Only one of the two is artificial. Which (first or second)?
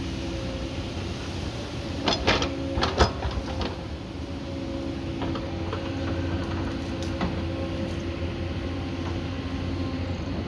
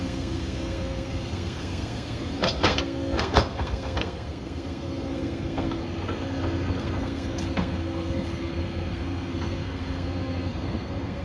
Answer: second